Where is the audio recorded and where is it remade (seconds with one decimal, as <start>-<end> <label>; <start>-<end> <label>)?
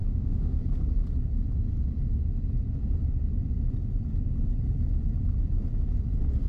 0.0-0.6 remade; 0.6-6.5 recorded